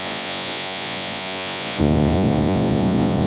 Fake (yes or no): yes